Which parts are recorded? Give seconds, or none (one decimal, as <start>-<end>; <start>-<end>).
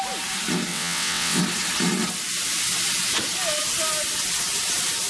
0.0-0.7; 1.4-5.1